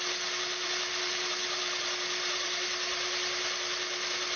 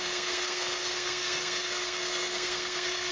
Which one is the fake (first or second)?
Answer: second